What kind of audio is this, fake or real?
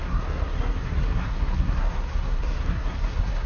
fake